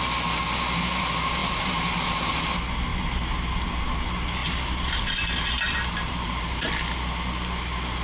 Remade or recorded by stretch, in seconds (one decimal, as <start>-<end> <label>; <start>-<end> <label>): 0.0-1.4 recorded; 1.4-2.3 remade; 2.3-4.4 recorded; 4.4-6.6 remade; 6.6-8.0 recorded